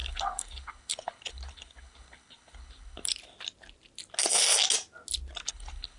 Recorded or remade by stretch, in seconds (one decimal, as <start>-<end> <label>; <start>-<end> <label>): 0.0-3.1 remade; 3.1-5.5 recorded; 5.5-6.0 remade